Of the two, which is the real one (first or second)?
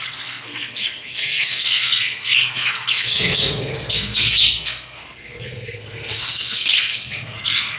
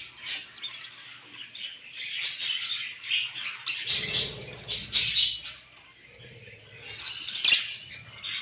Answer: second